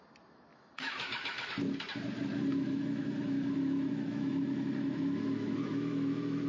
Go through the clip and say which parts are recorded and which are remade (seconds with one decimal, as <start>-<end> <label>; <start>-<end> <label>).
0.0-0.5 recorded; 0.5-1.5 remade; 1.5-2.5 recorded; 2.5-6.5 remade